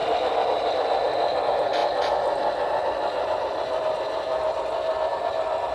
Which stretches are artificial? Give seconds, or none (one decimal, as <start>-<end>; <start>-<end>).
none